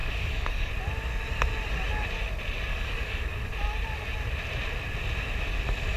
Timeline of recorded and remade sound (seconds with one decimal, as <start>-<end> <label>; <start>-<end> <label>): 0.0-0.7 remade; 0.7-2.7 recorded; 2.7-3.5 remade; 3.5-6.0 recorded